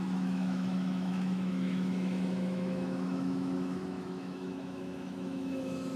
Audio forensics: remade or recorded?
remade